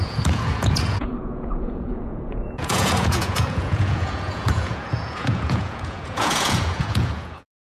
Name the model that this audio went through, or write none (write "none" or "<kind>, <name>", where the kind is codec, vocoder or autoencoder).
vocoder, Vocos